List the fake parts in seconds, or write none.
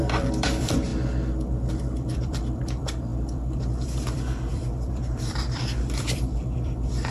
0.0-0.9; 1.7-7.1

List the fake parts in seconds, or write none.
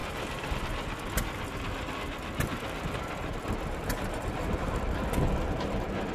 3.8-4.8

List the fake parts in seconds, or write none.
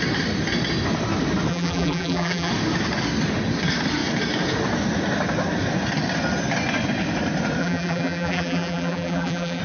1.5-2.5; 7.6-9.6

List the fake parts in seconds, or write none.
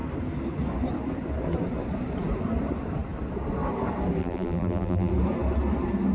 4.2-5.1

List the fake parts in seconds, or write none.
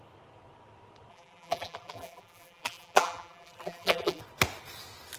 1.1-4.2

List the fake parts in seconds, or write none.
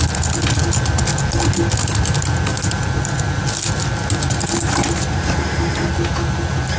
2.5-3.4